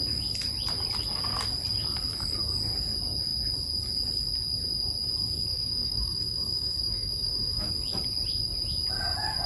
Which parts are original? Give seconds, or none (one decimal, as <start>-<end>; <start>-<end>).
0.0-5.5; 7.7-9.5